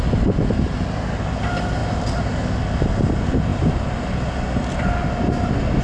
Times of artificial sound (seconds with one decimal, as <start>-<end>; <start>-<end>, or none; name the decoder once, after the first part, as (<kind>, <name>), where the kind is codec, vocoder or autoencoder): none

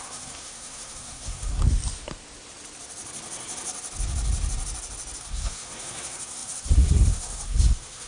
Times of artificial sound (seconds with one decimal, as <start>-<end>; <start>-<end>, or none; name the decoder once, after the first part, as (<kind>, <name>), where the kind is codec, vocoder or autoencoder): 0.0-1.6 (codec, SNAC); 5.2-8.1